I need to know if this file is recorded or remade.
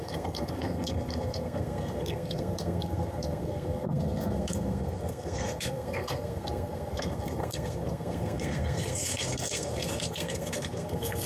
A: remade